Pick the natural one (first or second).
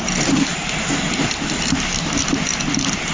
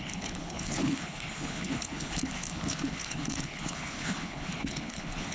first